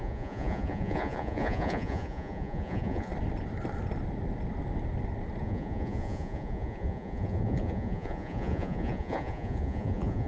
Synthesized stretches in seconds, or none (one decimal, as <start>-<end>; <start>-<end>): 0.0-3.1; 5.4-10.3